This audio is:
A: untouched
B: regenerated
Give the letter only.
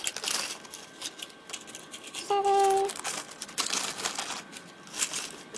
A